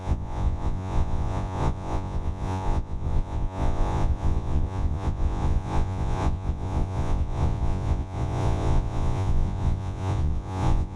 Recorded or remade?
remade